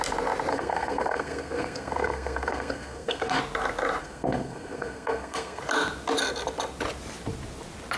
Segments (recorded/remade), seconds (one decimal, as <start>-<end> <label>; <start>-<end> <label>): 0.0-0.5 recorded; 0.5-3.4 remade; 3.4-4.0 recorded; 4.0-5.6 remade; 5.6-8.0 recorded